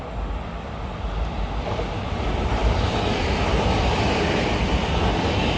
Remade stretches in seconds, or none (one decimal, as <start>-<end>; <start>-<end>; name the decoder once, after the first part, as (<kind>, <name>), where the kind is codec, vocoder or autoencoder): 1.6-2.2 (vocoder, BigVGAN v2)